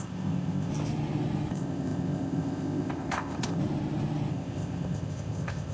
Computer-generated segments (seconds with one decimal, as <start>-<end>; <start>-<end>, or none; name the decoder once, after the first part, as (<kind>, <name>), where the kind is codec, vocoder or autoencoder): 0.0-0.7 (codec, ZipCodec); 1.5-3.6; 4.3-5.7